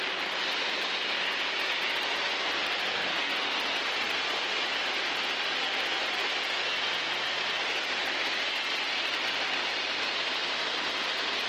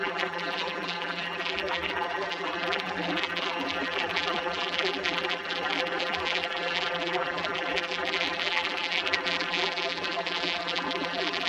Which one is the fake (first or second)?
second